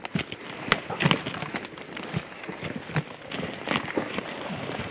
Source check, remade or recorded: recorded